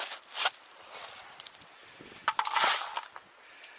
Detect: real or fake real